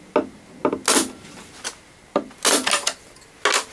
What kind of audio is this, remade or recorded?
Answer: recorded